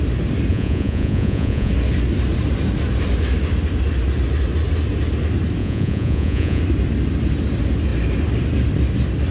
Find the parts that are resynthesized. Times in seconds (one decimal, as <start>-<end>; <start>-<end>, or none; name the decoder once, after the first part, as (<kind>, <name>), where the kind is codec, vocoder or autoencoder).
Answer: 0.5-1.7 (vocoder, Vocos); 5.6-6.6